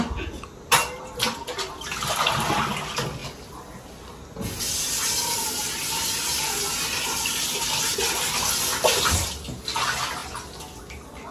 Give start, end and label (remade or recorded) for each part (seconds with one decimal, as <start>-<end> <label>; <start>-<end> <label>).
0.0-11.3 recorded